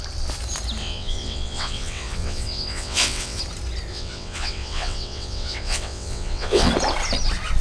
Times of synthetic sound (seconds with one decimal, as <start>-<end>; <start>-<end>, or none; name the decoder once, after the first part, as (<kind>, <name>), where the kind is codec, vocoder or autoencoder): 0.8-3.4 (vocoder, WaveNeXt); 3.9-6.7